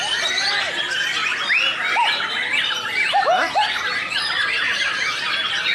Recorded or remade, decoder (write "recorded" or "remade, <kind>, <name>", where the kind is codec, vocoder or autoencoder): recorded